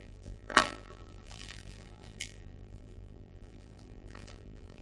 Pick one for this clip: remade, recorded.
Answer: remade